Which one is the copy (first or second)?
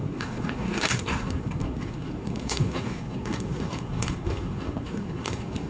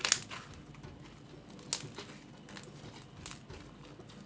first